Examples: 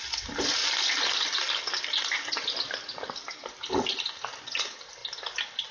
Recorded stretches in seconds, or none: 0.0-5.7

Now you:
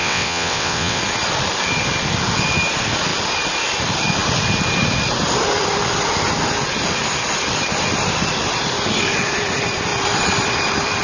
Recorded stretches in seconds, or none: 1.0-11.0

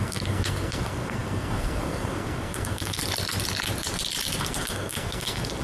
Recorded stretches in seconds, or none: 3.0-4.4

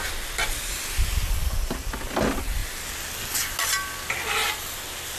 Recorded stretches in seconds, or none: 0.0-5.2

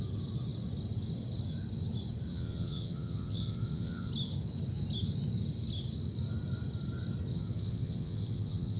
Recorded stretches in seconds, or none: 0.0-2.3; 4.1-7.3